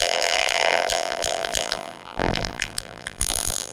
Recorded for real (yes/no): no